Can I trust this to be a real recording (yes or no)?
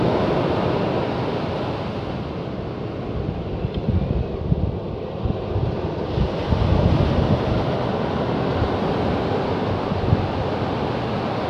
yes